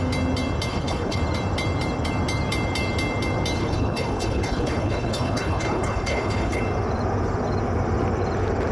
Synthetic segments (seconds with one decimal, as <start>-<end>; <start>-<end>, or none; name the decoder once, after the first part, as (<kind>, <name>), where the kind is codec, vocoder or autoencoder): 0.7-1.2 (codec, HILCodec); 3.6-6.6